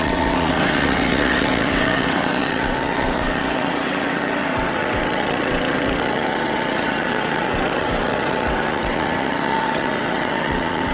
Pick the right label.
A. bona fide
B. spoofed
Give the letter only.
B